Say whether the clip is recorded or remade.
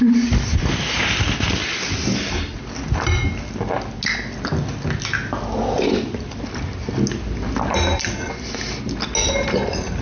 recorded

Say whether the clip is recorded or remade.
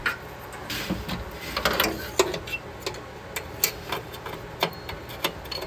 recorded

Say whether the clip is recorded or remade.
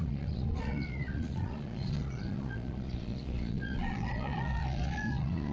remade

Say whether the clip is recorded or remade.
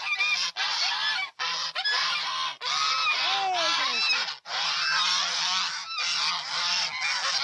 recorded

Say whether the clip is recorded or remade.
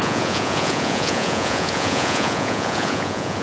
remade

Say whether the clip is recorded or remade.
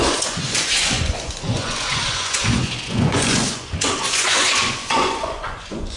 remade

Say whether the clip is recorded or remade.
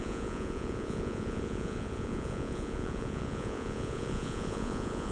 remade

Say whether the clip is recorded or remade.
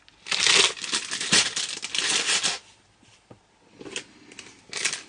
recorded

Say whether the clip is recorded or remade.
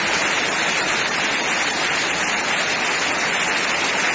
recorded